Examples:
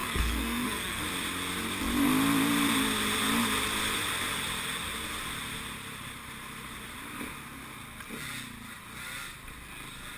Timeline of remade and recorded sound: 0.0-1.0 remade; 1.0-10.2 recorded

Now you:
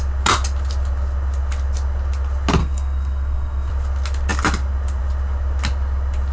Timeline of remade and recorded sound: 0.0-2.6 recorded; 2.6-3.7 remade; 3.7-6.3 recorded